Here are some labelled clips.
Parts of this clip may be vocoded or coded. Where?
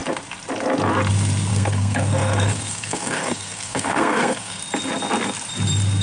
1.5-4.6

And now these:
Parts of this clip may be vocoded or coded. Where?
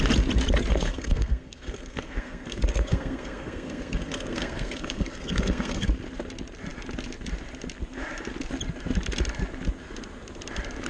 0.7-5.9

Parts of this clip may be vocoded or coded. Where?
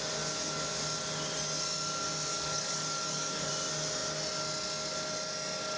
2.3-3.5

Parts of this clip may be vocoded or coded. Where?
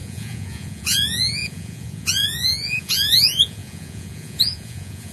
0.0-5.1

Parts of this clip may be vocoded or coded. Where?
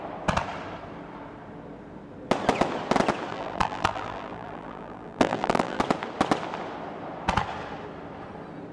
3.3-5.8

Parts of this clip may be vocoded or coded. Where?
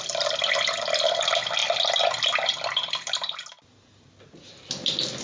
none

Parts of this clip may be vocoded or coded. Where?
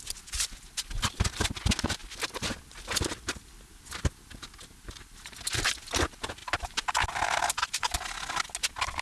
none